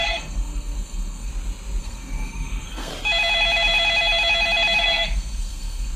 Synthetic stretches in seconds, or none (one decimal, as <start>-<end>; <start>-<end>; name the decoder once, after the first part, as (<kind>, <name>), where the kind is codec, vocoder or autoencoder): 0.0-1.3 (codec, SNAC); 1.8-2.9; 4.8-6.0